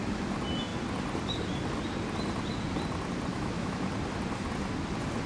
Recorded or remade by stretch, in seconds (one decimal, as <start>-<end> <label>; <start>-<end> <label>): 0.0-3.3 recorded; 3.3-3.9 remade; 3.9-5.3 recorded